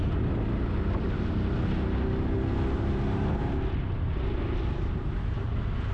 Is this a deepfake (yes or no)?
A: no